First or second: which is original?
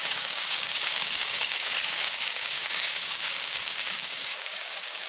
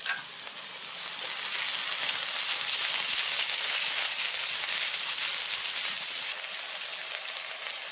second